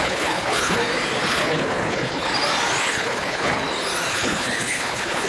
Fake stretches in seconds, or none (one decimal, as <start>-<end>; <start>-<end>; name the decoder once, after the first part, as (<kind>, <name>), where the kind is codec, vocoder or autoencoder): 0.0-0.8 (codec, HILCodec); 1.3-2.3; 2.8-3.6; 4.1-5.3